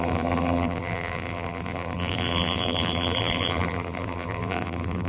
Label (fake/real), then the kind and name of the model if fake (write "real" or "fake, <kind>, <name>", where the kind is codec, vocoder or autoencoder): fake, vocoder, BigVGAN v2